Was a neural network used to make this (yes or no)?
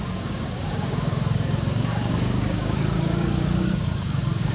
yes